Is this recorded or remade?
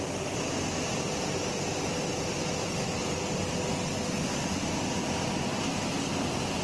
recorded